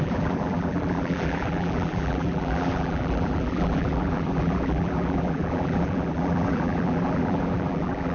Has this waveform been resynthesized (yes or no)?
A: yes